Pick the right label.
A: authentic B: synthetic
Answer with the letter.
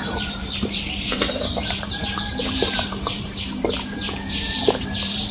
B